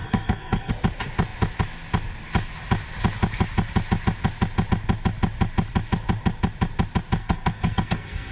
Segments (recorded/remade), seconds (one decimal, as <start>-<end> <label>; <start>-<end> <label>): 0.0-0.7 remade; 0.7-7.2 recorded; 7.2-8.3 remade